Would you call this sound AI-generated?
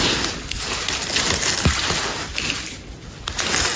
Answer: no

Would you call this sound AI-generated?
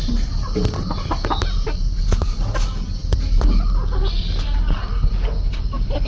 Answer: no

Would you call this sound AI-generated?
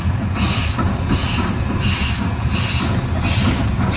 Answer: no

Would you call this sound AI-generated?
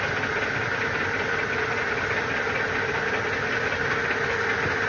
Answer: no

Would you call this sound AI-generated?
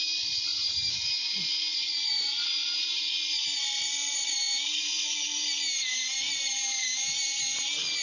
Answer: no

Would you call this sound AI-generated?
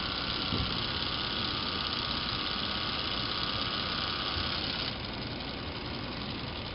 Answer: no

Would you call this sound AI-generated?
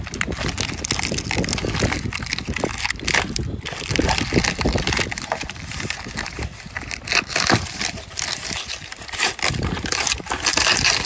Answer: no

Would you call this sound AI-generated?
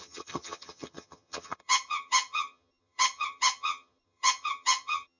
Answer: yes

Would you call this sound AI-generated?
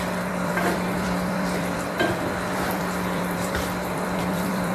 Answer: yes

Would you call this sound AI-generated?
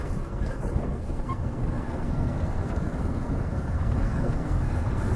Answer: yes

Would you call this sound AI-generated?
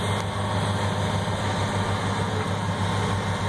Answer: no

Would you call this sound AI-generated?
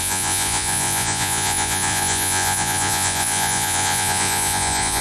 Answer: yes